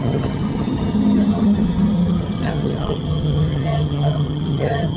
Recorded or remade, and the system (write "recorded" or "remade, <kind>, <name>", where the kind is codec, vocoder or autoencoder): remade, vocoder, HiFi-GAN